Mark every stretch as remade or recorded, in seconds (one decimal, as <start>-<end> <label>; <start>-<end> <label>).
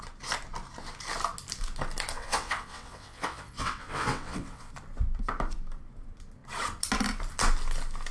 0.0-2.1 recorded; 2.1-4.7 remade; 4.7-8.1 recorded